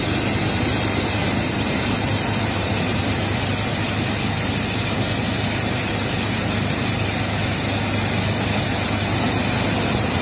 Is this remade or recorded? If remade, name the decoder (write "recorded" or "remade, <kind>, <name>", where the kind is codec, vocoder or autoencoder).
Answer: recorded